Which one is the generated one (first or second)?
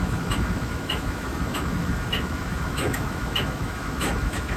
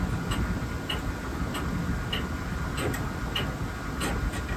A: first